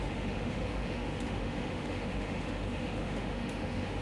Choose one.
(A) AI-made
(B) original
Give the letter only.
A